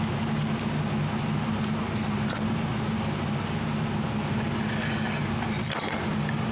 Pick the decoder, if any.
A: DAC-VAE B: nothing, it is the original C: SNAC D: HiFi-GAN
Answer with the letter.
B